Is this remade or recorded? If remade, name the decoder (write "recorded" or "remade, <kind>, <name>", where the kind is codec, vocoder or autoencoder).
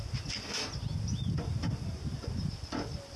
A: recorded